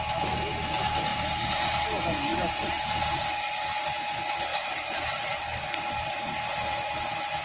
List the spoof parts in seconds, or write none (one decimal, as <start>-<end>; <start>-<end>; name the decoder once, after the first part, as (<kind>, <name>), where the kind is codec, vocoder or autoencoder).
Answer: 2.3-3.2 (vocoder, BigVGAN v2); 4.5-6.4